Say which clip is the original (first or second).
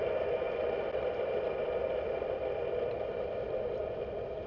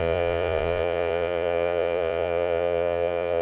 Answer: first